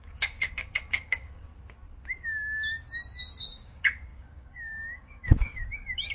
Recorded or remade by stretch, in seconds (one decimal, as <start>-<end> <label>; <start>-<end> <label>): 0.0-1.5 remade; 1.5-3.4 recorded; 3.4-6.1 remade